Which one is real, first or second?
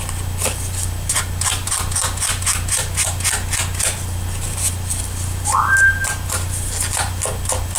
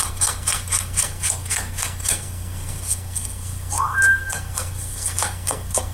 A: first